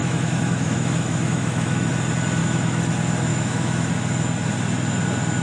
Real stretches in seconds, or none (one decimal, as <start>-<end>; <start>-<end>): 1.9-2.4; 2.9-3.3; 3.9-5.4